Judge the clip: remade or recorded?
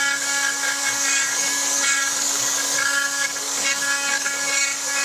remade